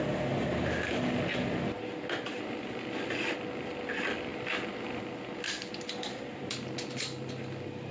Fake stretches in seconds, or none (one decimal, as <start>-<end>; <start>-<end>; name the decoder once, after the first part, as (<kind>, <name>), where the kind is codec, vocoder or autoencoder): none